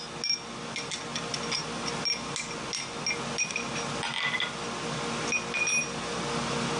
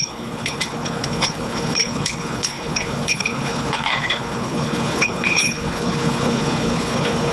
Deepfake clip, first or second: second